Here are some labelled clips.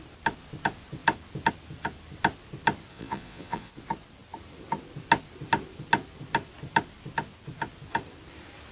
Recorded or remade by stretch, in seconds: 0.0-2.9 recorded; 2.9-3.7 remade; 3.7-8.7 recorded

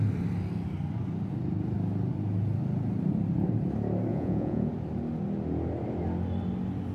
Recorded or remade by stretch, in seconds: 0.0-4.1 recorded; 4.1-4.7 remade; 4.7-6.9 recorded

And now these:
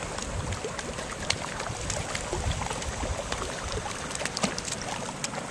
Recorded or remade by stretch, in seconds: 0.0-5.5 recorded